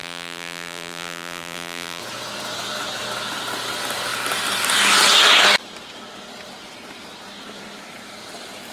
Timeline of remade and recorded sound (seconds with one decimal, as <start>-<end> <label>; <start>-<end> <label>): 0.0-2.0 remade; 2.0-8.7 recorded